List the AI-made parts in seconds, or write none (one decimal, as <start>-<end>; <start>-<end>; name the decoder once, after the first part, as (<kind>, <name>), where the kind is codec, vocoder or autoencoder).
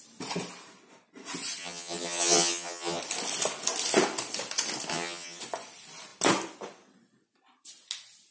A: 1.6-3.0 (vocoder, HiFi-GAN); 4.9-5.4